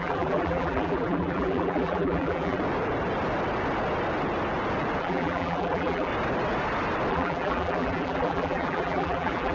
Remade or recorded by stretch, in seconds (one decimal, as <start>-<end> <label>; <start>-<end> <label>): 0.0-2.6 remade; 2.6-5.0 recorded; 5.0-6.1 remade; 6.1-7.1 recorded; 7.1-9.5 remade